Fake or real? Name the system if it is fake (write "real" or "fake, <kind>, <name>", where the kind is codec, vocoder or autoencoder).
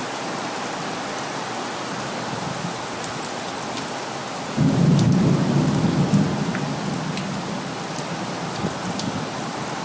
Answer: real